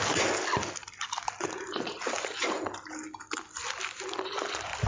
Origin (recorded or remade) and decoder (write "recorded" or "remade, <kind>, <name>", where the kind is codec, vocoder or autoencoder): recorded